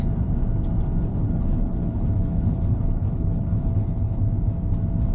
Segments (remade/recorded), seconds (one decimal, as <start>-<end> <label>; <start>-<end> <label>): 0.0-1.1 recorded; 1.1-4.2 remade; 4.2-5.1 recorded